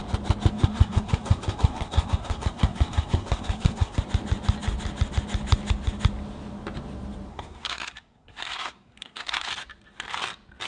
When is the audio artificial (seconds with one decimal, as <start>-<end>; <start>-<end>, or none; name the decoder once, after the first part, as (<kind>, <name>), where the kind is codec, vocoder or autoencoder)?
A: 0.5-4.0 (codec, SNAC); 7.3-9.5